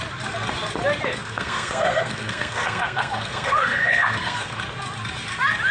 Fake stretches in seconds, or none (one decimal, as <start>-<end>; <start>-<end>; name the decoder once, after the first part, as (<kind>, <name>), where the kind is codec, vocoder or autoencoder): 1.2-4.6 (codec, SNAC)